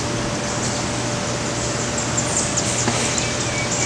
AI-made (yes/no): no